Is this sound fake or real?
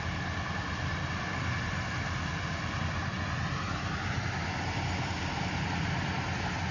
real